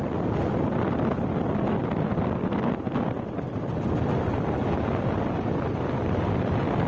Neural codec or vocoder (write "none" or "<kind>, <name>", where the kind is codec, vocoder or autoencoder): none